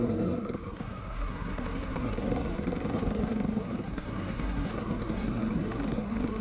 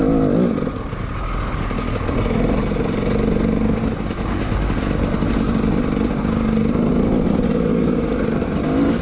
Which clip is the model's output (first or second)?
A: first